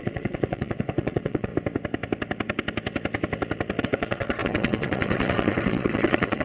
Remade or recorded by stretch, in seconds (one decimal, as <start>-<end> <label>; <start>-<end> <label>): 0.0-1.5 remade; 1.5-3.8 recorded; 3.8-6.4 remade